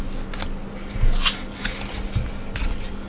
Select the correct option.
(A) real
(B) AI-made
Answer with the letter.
A